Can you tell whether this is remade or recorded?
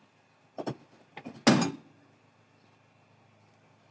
recorded